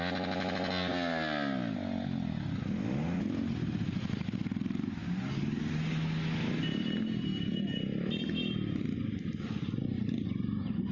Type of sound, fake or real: real